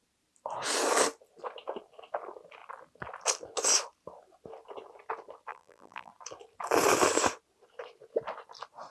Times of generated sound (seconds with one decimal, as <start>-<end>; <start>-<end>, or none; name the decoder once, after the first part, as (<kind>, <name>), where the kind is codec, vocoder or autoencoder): 5.5-6.1 (vocoder, BigVGAN v2)